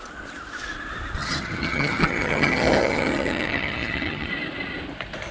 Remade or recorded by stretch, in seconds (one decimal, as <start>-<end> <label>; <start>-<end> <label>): 0.0-1.2 recorded; 1.2-4.3 remade; 4.3-5.3 recorded